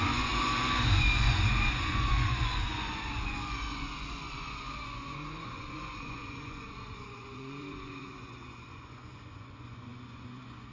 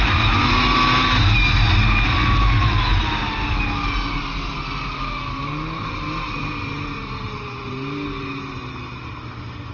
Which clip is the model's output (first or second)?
first